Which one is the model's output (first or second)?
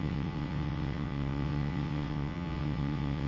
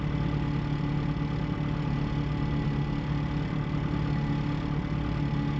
first